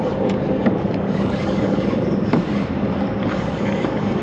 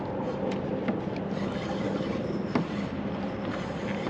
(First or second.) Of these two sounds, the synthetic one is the first